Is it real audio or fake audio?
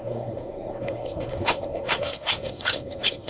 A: fake